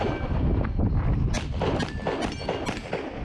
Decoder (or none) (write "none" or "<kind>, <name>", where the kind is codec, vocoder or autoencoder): none